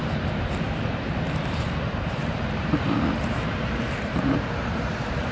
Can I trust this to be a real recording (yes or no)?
no